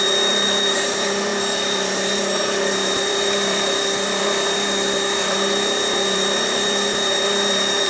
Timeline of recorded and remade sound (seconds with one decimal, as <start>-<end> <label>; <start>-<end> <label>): 0.0-7.9 remade